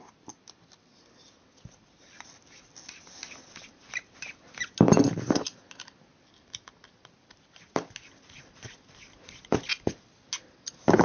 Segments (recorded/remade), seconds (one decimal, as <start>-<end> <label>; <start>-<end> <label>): 0.0-11.0 recorded